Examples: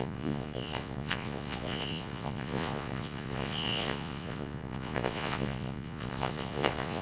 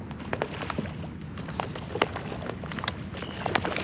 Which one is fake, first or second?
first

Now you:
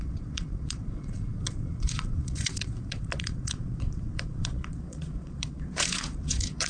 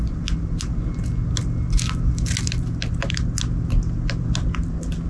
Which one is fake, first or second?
first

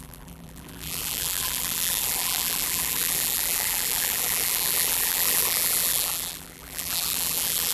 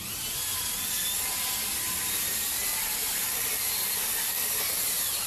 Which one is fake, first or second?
first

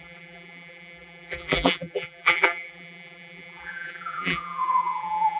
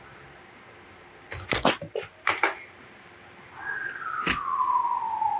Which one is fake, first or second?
first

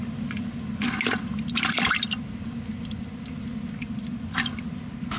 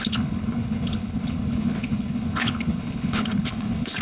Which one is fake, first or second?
second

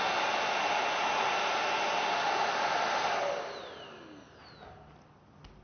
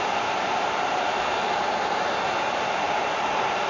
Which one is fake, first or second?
second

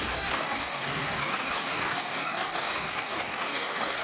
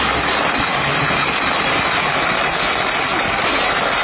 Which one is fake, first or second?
first